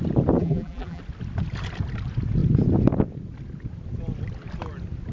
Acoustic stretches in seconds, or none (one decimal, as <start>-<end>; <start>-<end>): 0.0-0.4; 1.0-5.1